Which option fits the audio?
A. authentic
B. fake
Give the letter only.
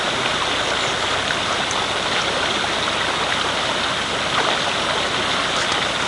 A